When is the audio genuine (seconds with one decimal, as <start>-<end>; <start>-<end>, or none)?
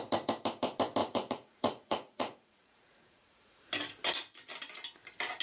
0.0-1.0; 3.7-5.4